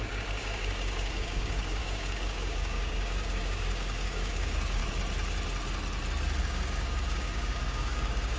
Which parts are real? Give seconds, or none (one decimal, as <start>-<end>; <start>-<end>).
4.8-6.4